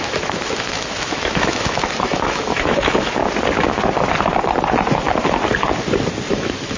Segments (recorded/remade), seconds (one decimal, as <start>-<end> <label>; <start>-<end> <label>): 0.0-3.2 remade; 3.2-6.3 recorded; 6.3-6.8 remade